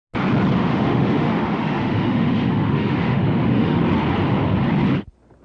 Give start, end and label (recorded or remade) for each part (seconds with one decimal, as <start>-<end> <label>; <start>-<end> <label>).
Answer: 0.0-0.6 recorded; 0.6-3.8 remade; 3.8-5.4 recorded